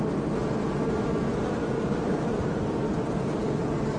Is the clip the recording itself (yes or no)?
yes